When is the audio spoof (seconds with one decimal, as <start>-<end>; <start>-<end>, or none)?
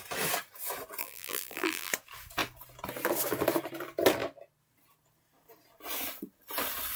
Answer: 1.0-1.9